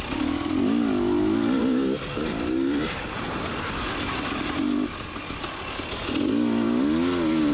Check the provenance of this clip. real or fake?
real